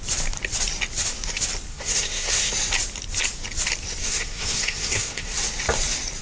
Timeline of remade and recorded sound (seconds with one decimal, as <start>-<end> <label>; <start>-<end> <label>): 0.0-1.7 recorded; 1.7-2.5 remade; 2.5-4.0 recorded; 4.0-5.4 remade; 5.4-6.2 recorded